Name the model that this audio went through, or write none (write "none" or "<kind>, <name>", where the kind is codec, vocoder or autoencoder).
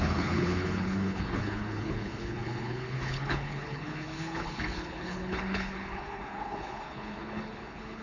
codec, HILCodec